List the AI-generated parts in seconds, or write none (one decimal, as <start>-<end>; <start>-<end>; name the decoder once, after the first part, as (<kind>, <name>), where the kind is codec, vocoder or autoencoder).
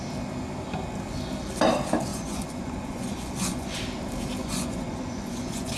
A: 2.1-3.8 (vocoder, Vocos); 4.4-5.8